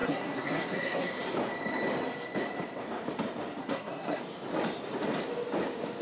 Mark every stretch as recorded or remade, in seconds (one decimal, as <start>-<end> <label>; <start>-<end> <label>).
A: 0.0-1.2 remade; 1.2-3.6 recorded; 3.6-4.2 remade; 4.2-6.0 recorded